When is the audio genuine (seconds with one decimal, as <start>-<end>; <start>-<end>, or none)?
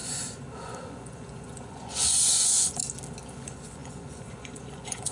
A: 2.8-3.3